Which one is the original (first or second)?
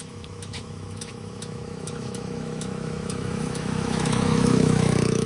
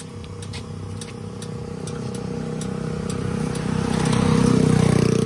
second